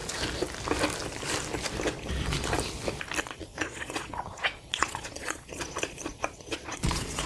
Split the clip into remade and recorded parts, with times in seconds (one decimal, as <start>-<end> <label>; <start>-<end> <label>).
0.0-3.2 recorded; 3.2-7.3 remade

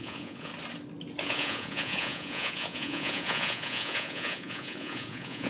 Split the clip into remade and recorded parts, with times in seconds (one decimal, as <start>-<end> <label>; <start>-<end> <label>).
0.0-0.5 remade; 0.5-1.2 recorded; 1.2-5.5 remade

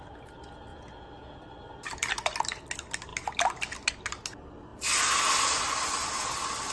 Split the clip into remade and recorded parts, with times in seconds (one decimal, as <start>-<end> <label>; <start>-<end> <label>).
0.0-0.7 recorded; 0.7-1.4 remade; 1.4-6.7 recorded

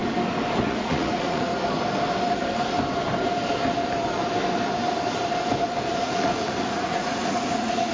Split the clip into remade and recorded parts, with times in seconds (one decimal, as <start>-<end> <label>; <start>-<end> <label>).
0.0-0.6 recorded; 0.6-1.5 remade; 1.5-6.0 recorded; 6.0-7.9 remade

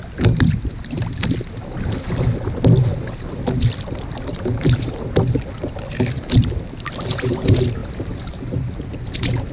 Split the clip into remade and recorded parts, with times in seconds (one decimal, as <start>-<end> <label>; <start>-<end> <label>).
0.0-9.5 recorded

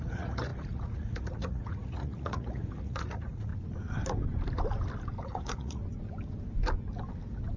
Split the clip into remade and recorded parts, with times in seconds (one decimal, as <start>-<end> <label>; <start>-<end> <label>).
0.0-3.5 remade; 3.5-5.2 recorded; 5.2-5.8 remade; 5.8-7.6 recorded